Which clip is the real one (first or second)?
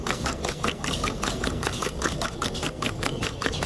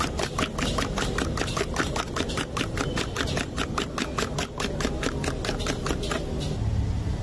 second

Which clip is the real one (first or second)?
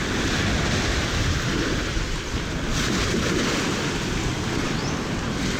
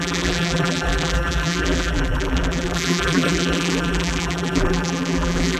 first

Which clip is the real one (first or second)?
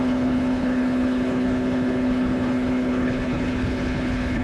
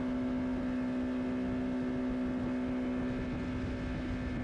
second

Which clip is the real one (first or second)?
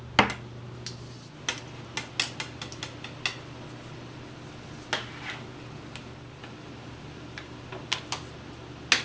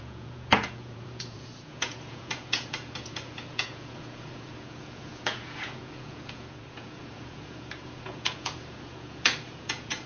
first